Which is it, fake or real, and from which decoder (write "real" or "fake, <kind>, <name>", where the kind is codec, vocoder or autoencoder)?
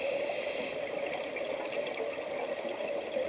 real